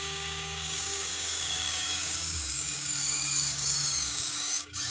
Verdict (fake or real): fake